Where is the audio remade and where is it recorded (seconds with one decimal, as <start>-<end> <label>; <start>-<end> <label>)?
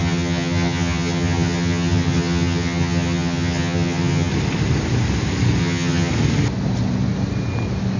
0.0-4.3 remade; 4.3-5.6 recorded; 5.6-6.1 remade; 6.1-8.0 recorded